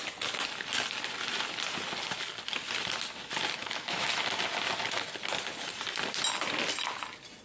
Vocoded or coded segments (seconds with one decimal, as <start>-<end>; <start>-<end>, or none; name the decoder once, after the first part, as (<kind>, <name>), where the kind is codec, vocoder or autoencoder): 3.6-4.2 (autoencoder, DAC-VAE)